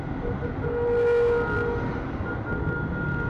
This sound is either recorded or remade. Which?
recorded